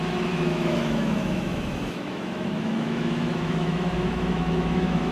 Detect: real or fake fake